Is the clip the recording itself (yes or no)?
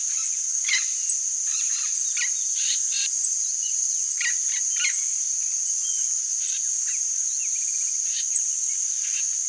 yes